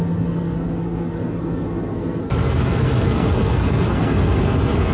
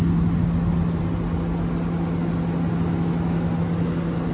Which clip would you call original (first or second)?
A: second